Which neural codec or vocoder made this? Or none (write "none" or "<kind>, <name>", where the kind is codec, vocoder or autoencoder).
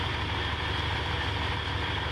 none